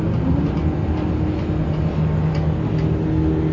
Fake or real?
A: real